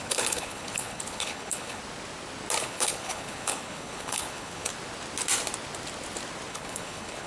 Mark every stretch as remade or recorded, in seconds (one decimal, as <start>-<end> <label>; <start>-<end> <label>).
0.0-1.8 remade; 1.8-2.6 recorded; 2.6-4.7 remade; 4.7-6.5 recorded; 6.5-7.3 remade